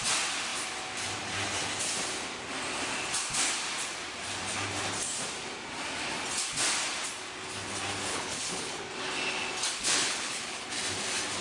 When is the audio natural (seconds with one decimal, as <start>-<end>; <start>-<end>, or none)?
0.0-8.1; 8.8-9.8; 10.8-11.4